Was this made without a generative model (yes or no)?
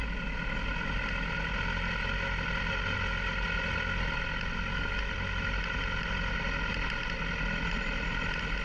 yes